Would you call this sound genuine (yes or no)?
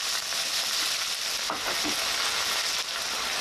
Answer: yes